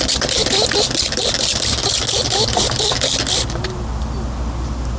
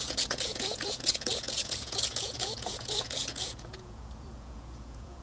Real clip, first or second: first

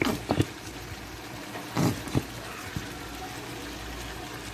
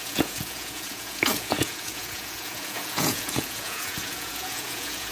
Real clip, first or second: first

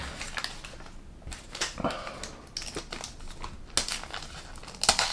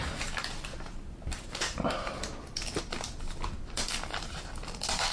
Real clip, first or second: first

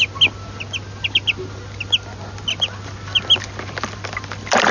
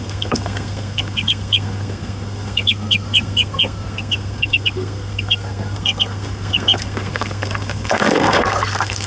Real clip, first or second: first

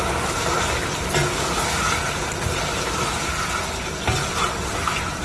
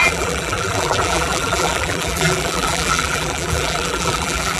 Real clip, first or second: first